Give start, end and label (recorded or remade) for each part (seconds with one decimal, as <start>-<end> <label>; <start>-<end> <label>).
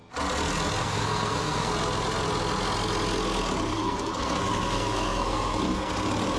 0.0-0.8 recorded; 0.8-1.7 remade; 1.7-3.7 recorded; 3.7-5.9 remade; 5.9-6.4 recorded